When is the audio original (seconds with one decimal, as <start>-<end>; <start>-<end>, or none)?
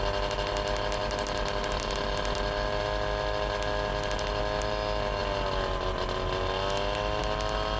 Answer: 0.0-7.8